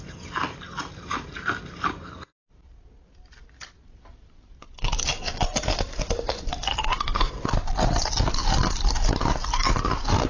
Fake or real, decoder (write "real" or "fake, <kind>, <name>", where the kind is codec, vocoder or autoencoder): real